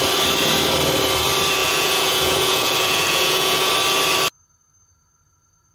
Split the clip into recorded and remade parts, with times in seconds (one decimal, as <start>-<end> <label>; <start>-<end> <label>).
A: 0.0-1.6 recorded; 1.6-3.7 remade; 3.7-5.7 recorded